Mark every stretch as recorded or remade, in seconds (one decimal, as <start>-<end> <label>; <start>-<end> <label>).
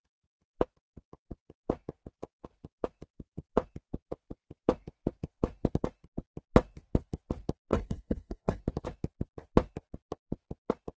0.0-7.7 recorded; 7.7-8.6 remade; 8.6-11.0 recorded